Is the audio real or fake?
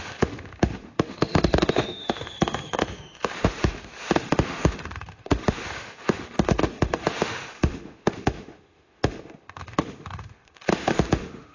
fake